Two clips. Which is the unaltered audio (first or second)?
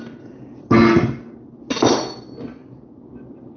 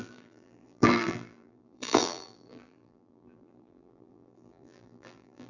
first